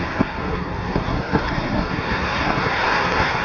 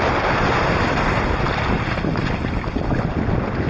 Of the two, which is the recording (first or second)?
second